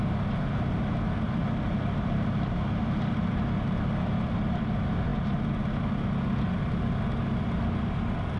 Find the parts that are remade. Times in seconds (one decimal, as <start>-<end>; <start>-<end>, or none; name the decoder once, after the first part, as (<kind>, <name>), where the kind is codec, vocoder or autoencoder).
none